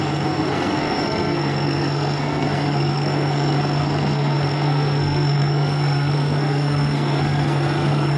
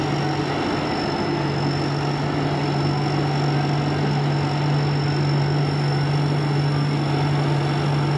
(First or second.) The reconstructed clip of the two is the first